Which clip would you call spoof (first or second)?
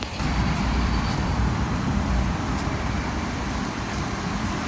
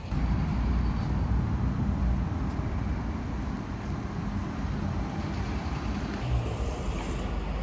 first